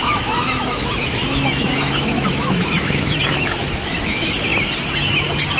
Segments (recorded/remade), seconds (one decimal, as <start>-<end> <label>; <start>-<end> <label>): 0.0-4.5 remade; 4.5-5.6 recorded